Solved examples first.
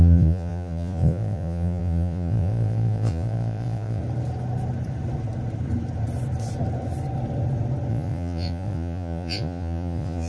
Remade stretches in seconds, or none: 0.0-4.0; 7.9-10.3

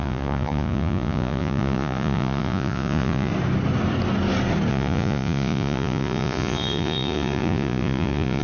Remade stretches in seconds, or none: 0.0-3.3; 4.7-8.4

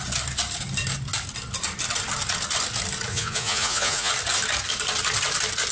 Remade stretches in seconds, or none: 3.1-4.1

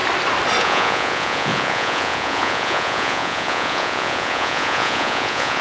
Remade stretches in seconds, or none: 0.6-5.6

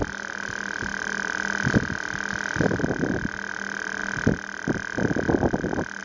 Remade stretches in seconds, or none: none

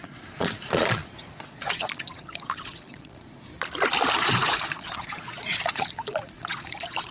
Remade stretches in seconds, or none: 0.0-3.5; 4.2-7.1

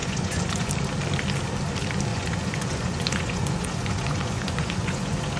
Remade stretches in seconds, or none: 0.0-0.7; 2.1-5.4